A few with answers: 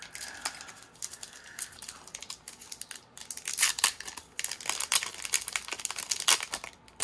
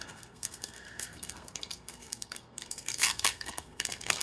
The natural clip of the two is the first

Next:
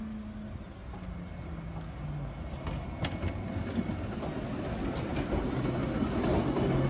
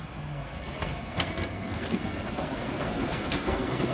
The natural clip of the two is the first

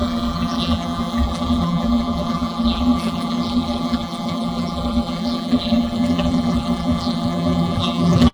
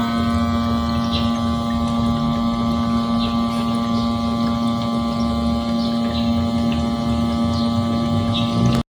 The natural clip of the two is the second